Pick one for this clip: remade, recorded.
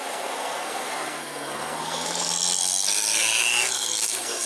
remade